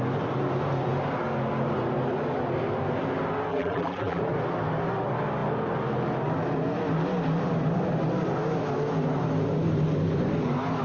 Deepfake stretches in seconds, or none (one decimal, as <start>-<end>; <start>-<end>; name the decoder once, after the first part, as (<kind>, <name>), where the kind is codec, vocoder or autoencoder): 3.5-4.2 (vocoder, BigVGAN v2)